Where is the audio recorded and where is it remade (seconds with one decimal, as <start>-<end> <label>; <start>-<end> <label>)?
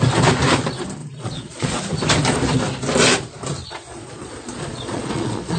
0.0-1.0 recorded; 1.0-1.8 remade; 1.8-3.6 recorded; 3.6-5.6 remade